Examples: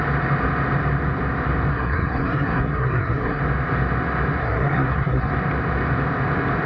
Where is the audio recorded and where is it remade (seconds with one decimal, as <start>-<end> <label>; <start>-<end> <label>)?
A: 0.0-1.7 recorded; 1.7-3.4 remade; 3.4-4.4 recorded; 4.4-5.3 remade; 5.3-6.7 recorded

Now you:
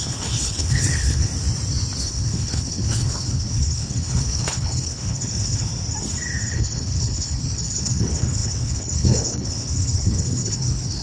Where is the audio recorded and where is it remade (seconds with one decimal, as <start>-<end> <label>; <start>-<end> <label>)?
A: 0.0-1.3 remade; 1.3-2.0 recorded; 2.0-5.7 remade; 5.7-6.5 recorded; 6.5-11.0 remade

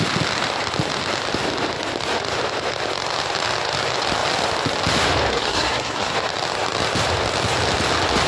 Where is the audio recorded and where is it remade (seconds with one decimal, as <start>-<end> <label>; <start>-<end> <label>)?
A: 0.0-5.3 recorded; 5.3-6.1 remade; 6.1-8.3 recorded

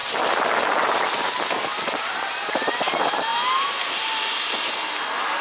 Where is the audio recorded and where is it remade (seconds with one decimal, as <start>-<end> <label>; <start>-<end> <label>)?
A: 0.0-5.4 recorded

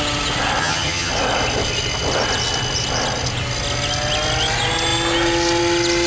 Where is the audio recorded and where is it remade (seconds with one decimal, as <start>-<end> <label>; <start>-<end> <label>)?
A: 0.0-0.6 recorded; 0.6-1.1 remade; 1.1-6.1 recorded